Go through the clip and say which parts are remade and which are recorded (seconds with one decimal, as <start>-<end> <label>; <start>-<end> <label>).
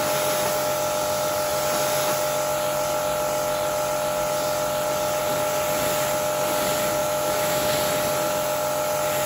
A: 0.0-7.0 recorded; 7.0-7.7 remade; 7.7-9.3 recorded